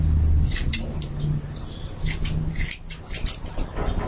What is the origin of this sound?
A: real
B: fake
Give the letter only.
A